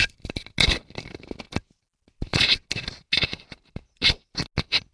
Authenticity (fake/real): real